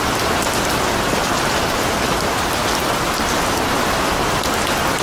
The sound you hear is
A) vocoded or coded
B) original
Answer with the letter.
B